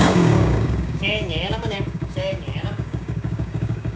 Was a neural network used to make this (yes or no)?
yes